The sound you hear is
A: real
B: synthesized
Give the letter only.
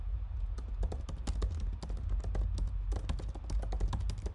A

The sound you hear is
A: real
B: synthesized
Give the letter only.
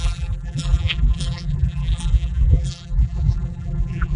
B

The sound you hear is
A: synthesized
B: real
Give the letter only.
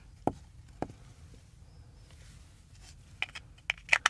B